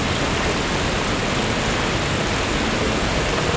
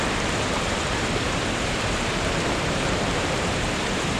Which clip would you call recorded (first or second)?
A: first